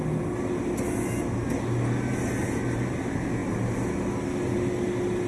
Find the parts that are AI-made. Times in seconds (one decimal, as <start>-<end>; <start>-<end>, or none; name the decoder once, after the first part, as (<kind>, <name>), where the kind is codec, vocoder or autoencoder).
none